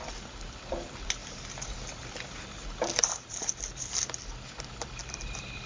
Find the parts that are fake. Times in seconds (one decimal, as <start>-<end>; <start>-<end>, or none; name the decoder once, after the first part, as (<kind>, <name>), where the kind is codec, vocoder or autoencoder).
0.0-5.7 (vocoder, BigVGAN v2)